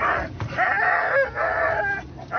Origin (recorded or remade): recorded